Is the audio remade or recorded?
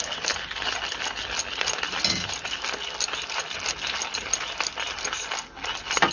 recorded